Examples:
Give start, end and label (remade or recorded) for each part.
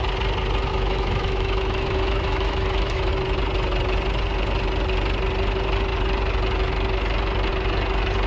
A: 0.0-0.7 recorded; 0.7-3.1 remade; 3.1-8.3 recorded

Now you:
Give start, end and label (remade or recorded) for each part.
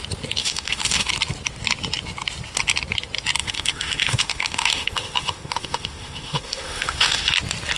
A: 0.0-0.4 recorded; 0.4-1.1 remade; 1.1-3.4 recorded; 3.4-7.3 remade; 7.3-7.8 recorded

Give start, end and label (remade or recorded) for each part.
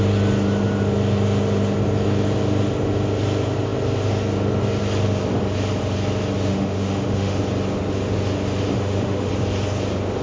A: 0.0-6.5 recorded; 6.5-7.4 remade; 7.4-8.7 recorded; 8.7-9.3 remade; 9.3-10.2 recorded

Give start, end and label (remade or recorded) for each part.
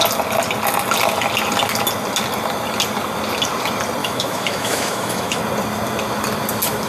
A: 0.0-4.0 recorded; 4.0-5.4 remade; 5.4-6.9 recorded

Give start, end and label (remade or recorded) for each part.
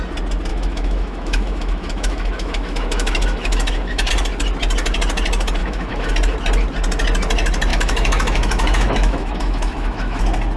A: 0.0-0.5 recorded; 0.5-4.1 remade; 4.1-5.6 recorded; 5.6-6.1 remade; 6.1-7.7 recorded; 7.7-10.2 remade; 10.2-10.6 recorded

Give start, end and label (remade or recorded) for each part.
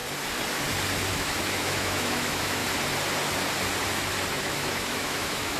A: 0.0-1.1 recorded; 1.1-2.6 remade; 2.6-4.3 recorded; 4.3-5.6 remade